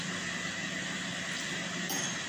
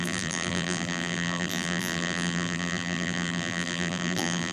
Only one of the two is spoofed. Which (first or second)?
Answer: second